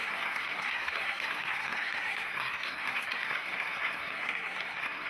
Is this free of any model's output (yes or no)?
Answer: no